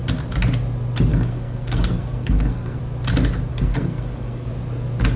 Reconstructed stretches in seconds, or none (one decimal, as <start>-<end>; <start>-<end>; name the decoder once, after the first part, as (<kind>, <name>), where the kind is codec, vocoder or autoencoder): 1.1-2.8 (codec, SNAC); 3.5-4.5